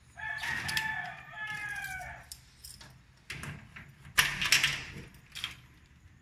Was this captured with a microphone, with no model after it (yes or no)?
yes